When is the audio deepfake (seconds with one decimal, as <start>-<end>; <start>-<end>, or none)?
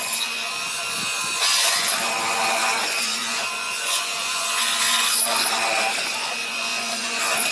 0.0-7.5